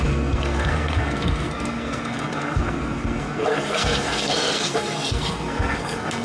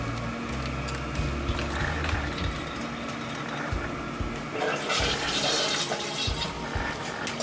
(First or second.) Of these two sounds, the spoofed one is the first